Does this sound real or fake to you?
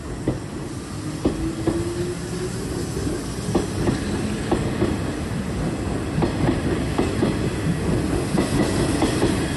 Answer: real